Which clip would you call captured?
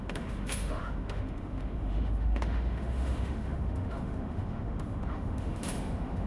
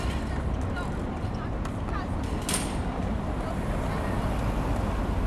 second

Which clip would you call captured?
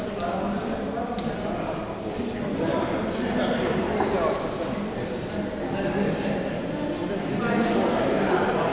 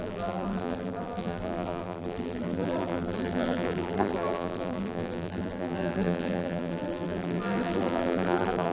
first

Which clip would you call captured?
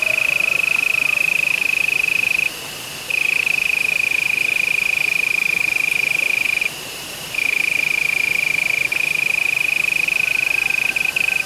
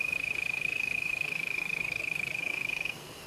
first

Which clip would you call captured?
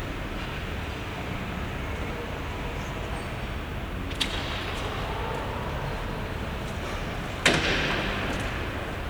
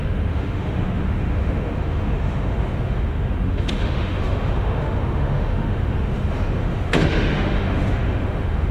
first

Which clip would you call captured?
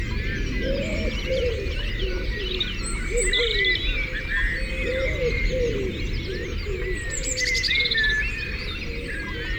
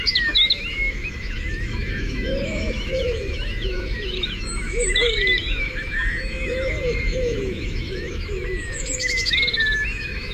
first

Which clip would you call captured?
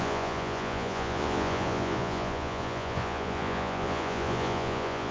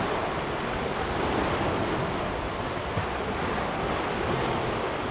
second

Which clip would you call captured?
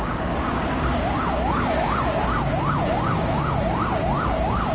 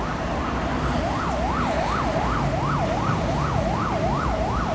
second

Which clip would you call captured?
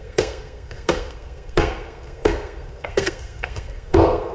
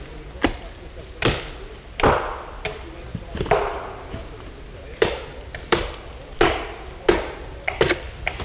second